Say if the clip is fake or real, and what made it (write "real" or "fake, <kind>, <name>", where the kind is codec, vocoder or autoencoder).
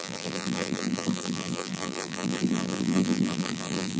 fake, vocoder, BigVGAN v2